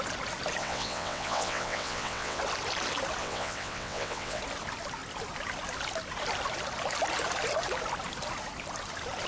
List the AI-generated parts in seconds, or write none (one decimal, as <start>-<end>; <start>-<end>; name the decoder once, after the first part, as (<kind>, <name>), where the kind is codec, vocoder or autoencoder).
0.6-2.4 (vocoder, WaveNeXt); 3.2-4.4